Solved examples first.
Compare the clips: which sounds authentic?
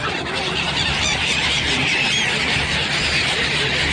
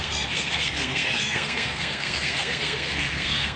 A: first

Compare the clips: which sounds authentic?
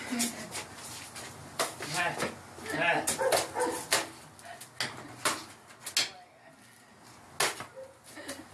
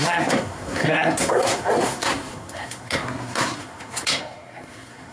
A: first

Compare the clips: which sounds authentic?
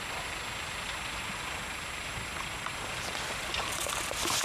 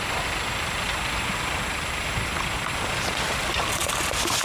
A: first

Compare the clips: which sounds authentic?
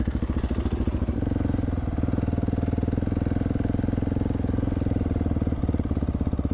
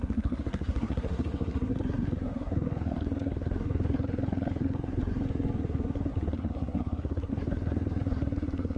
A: first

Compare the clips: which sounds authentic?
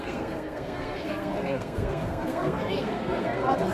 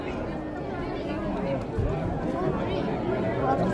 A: second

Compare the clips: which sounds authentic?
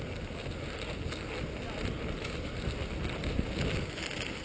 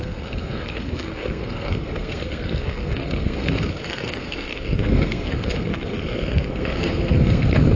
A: first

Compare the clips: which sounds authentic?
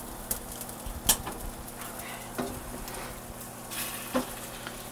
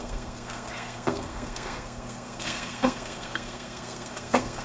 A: first